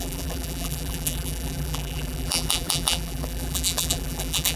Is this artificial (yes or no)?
yes